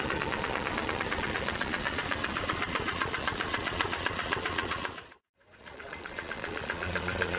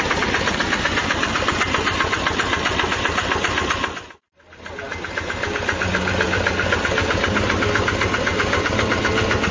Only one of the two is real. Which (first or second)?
second